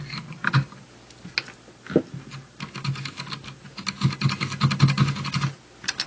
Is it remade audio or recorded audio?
recorded